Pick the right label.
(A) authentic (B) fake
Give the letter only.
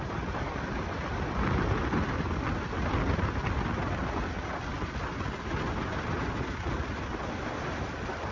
A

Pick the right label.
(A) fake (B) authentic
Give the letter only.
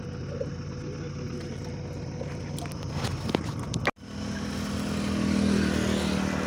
B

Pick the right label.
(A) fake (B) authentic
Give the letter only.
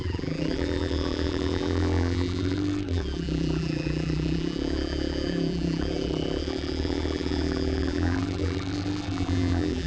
A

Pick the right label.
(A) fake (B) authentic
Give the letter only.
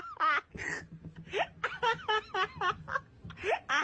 B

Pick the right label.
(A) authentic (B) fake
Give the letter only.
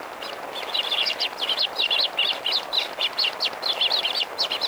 A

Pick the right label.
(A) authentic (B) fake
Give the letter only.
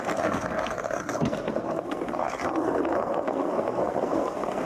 B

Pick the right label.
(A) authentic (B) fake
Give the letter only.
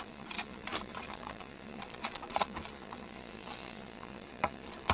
B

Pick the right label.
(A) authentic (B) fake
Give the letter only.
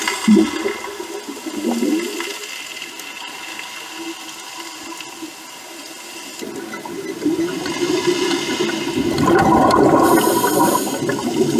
A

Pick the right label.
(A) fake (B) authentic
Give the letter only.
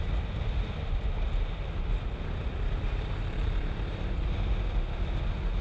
B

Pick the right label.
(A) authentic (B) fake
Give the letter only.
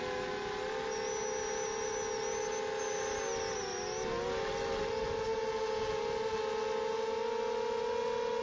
A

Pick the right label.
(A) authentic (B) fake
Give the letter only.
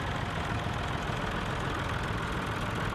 A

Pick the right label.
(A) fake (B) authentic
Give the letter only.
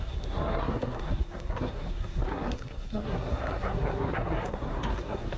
A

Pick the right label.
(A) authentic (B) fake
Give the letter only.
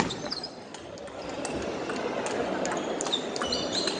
A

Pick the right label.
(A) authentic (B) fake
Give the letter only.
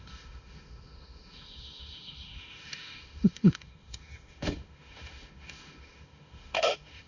B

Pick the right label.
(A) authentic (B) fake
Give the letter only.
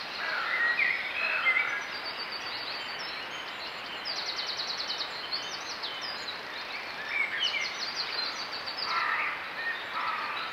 A